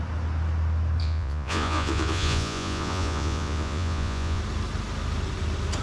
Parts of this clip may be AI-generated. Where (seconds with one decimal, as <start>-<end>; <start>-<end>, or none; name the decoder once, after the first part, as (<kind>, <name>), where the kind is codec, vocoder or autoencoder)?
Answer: 1.0-4.4 (vocoder, Vocos)